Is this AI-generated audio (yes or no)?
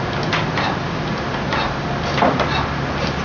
no